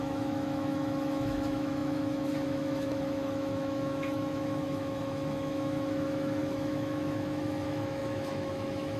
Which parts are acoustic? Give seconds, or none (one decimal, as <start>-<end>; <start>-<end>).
none